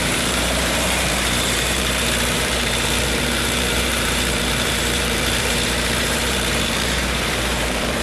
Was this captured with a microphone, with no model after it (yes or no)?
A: no